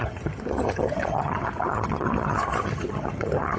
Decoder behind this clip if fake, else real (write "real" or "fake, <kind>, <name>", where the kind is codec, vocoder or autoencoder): fake, vocoder, HiFi-GAN